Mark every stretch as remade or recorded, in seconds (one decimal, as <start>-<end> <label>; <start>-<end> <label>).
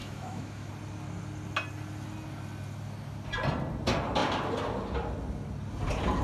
0.0-0.7 remade; 0.7-6.2 recorded